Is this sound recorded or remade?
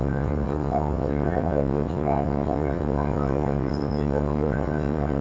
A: remade